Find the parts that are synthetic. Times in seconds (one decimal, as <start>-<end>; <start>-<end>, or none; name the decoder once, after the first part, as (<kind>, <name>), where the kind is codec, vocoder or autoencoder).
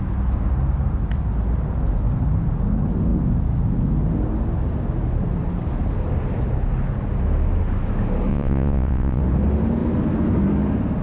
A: 8.3-9.2 (vocoder, Vocos)